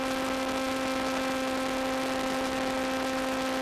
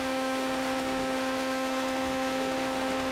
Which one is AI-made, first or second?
second